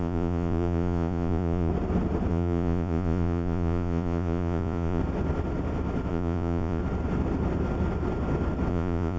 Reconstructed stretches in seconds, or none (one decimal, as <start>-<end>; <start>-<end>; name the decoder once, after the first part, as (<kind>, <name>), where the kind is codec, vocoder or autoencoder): 0.0-1.7 (vocoder, Vocos); 2.3-5.0; 6.1-6.8; 8.7-9.2